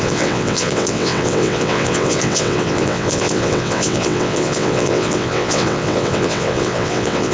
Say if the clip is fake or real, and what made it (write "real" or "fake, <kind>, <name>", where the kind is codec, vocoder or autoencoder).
fake, vocoder, WaveNeXt